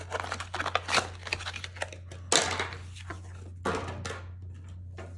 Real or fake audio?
real